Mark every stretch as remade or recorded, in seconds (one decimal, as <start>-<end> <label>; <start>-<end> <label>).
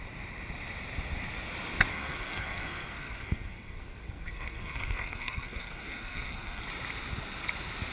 0.0-1.9 recorded; 1.9-6.6 remade; 6.6-7.9 recorded